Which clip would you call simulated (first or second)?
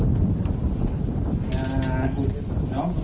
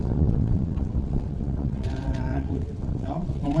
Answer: second